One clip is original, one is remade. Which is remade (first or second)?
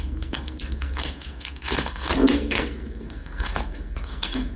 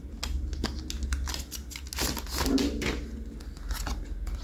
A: first